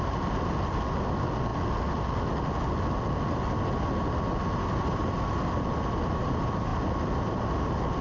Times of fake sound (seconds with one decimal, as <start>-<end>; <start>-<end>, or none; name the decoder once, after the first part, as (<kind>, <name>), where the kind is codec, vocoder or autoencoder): none